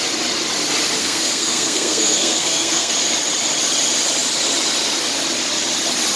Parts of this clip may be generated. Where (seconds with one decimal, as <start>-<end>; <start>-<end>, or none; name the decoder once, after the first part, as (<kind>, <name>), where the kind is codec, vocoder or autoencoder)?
1.0-2.9 (codec, SNAC)